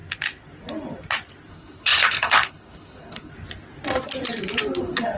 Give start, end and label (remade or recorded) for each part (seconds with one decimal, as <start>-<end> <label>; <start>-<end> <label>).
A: 0.0-1.5 recorded; 1.5-3.3 remade; 3.3-4.8 recorded; 4.8-5.2 remade